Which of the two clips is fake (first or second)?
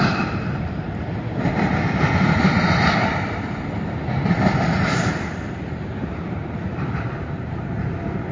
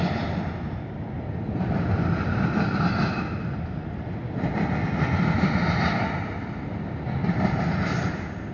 first